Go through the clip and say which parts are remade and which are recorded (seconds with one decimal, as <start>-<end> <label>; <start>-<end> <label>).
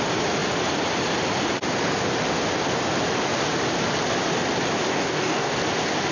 0.0-4.9 recorded; 4.9-5.5 remade; 5.5-6.1 recorded